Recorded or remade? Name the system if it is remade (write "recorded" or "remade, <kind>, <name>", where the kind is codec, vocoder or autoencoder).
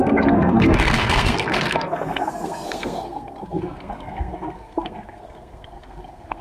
remade, codec, SNAC